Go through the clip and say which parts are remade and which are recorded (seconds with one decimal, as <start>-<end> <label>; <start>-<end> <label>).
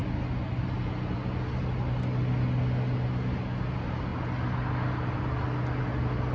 0.0-6.3 recorded